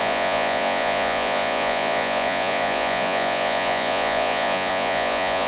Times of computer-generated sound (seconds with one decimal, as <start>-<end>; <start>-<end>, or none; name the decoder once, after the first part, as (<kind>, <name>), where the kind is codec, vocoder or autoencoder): 0.0-5.5 (vocoder, Vocos)